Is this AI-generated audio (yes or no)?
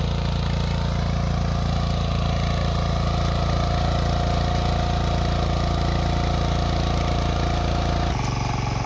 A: no